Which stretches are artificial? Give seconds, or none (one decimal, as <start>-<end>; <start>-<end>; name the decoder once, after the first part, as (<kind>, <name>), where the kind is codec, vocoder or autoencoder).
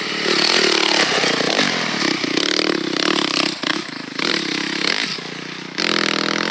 3.7-4.3 (codec, DAC); 5.1-5.8